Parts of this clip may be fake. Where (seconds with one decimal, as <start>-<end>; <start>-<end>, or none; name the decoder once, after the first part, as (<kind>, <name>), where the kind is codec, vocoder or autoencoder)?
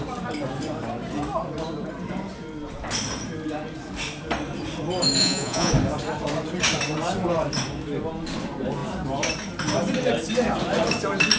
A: 5.2-5.7 (vocoder, Vocos)